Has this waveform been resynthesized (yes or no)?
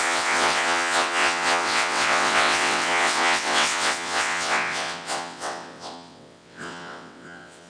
yes